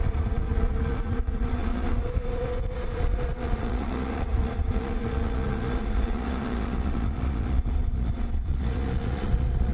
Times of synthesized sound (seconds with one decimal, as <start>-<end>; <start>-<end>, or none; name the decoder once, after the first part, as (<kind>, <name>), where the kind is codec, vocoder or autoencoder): 0.0-9.7 (vocoder, Vocos)